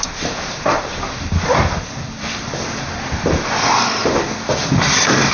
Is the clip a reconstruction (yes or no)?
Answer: yes